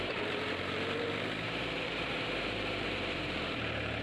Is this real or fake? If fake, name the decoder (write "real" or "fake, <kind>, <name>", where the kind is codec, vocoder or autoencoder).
fake, vocoder, BigVGAN v2